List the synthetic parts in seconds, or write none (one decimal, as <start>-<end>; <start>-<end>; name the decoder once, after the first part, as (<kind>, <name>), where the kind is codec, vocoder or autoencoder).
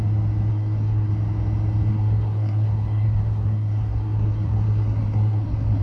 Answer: 0.5-1.1 (codec, SNAC); 1.9-5.8